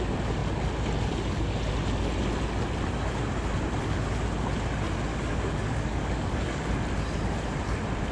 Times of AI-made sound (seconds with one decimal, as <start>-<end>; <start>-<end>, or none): 5.1-6.7